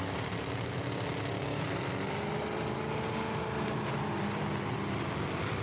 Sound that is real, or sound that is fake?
real